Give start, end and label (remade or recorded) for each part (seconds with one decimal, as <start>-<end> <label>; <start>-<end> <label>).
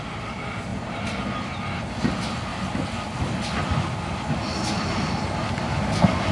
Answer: 0.0-6.3 recorded